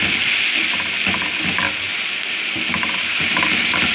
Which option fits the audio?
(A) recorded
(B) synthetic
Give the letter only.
A